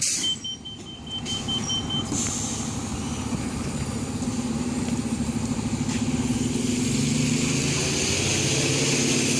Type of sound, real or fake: real